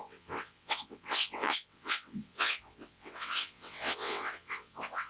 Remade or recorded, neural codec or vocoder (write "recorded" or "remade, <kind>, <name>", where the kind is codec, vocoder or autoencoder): remade, vocoder, WaveNeXt